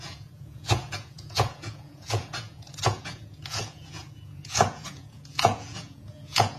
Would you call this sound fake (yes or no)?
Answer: yes